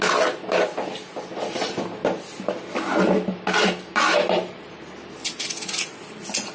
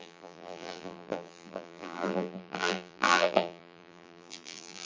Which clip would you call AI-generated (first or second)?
second